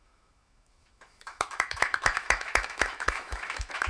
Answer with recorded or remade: remade